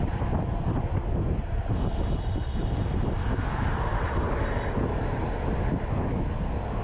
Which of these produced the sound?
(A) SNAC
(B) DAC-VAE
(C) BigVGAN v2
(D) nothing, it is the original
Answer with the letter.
D